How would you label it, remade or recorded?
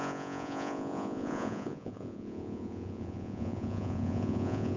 remade